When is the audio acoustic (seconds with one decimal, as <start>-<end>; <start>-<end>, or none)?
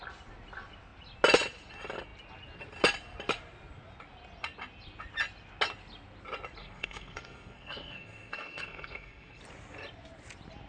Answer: 0.0-6.6; 9.4-10.7